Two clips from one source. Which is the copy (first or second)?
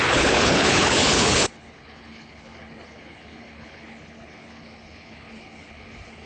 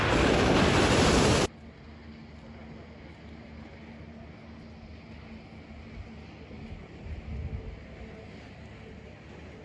first